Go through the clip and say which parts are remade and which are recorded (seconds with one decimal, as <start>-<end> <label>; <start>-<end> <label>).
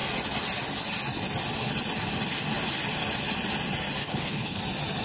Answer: 0.0-4.0 recorded; 4.0-4.6 remade; 4.6-5.0 recorded